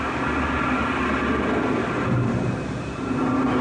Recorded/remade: recorded